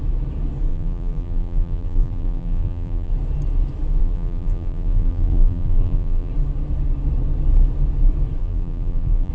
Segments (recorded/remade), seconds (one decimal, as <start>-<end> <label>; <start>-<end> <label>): 0.0-0.7 recorded; 0.7-3.1 remade; 3.1-4.0 recorded; 4.0-6.3 remade; 6.3-8.4 recorded; 8.4-9.3 remade